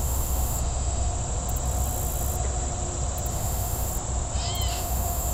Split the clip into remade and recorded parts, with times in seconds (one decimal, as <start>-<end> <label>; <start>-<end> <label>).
0.0-1.1 remade; 1.1-3.3 recorded; 3.3-3.9 remade; 3.9-4.7 recorded; 4.7-5.3 remade